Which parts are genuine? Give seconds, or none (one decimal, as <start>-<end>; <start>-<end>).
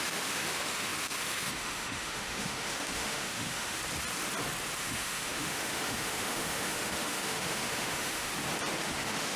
3.8-4.8; 8.3-8.8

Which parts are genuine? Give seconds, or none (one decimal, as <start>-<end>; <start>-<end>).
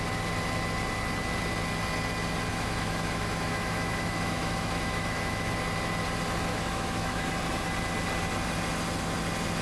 0.0-2.5; 5.5-6.5; 7.3-9.6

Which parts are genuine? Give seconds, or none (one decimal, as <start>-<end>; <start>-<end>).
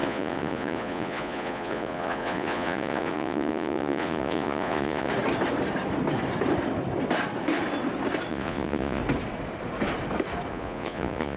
5.1-8.3; 9.0-10.5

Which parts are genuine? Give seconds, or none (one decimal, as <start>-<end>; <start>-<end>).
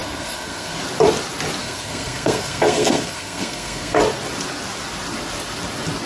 0.8-1.6; 4.0-6.1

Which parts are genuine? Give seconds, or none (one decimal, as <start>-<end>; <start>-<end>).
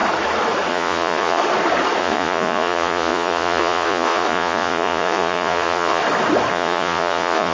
0.0-0.7; 1.4-2.0; 6.0-6.5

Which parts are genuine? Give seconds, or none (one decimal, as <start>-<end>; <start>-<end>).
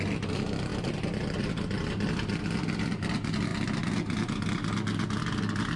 0.0-0.7; 1.5-5.8